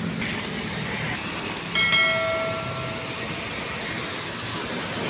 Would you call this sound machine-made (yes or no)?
no